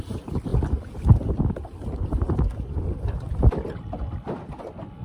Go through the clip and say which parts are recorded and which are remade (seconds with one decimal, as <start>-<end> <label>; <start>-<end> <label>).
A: 0.0-5.0 recorded